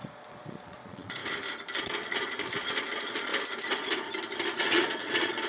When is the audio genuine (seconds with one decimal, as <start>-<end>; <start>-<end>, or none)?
1.2-1.8; 3.3-4.6